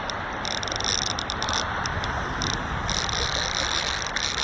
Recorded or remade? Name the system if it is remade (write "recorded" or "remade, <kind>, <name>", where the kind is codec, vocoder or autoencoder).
recorded